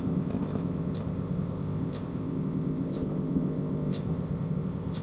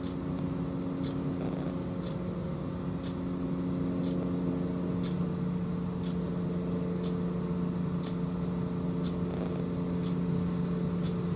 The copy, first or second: first